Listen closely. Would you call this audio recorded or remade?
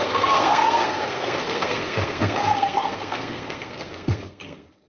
remade